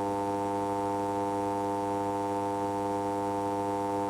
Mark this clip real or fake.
real